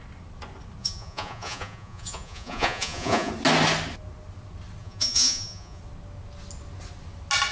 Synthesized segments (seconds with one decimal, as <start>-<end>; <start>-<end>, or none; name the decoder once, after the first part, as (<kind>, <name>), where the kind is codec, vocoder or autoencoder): 0.8-3.3 (vocoder, Vocos); 4.8-5.8